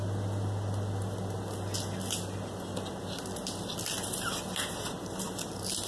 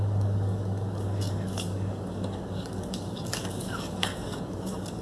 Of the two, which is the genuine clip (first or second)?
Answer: first